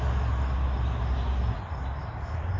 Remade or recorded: recorded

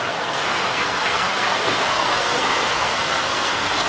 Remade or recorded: remade